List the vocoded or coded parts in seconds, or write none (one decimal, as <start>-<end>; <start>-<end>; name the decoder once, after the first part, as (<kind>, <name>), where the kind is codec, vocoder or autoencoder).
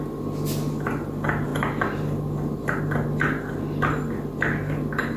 none